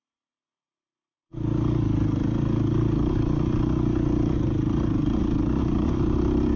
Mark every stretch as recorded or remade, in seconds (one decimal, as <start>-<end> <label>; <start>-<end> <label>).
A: 0.0-6.6 recorded